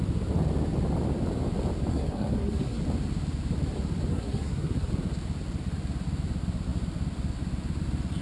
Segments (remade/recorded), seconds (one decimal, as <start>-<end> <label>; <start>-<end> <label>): 0.0-1.9 recorded; 1.9-2.8 remade; 2.8-4.1 recorded; 4.1-4.9 remade; 4.9-8.2 recorded